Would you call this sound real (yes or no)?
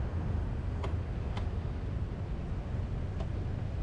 yes